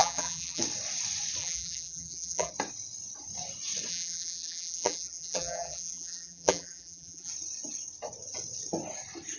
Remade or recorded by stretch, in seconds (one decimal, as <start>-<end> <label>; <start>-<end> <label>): 0.0-0.6 remade; 0.6-1.4 recorded; 1.4-2.5 remade; 2.5-3.9 recorded; 3.9-7.3 remade; 7.3-9.4 recorded